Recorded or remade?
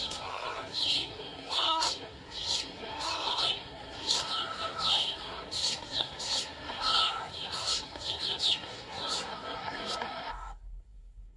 remade